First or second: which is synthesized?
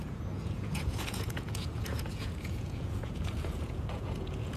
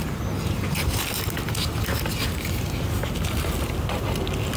first